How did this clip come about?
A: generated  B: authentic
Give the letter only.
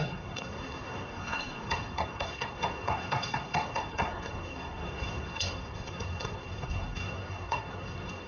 A